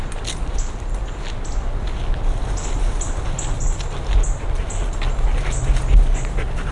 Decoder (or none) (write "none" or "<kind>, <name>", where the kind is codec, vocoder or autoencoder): none